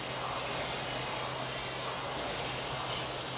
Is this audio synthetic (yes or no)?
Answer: no